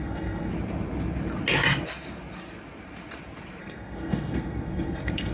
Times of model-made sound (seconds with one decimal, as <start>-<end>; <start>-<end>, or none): 0.0-0.5; 3.6-5.3